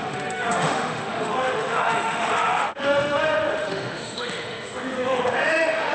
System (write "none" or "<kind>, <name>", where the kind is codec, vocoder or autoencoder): autoencoder, DAC-VAE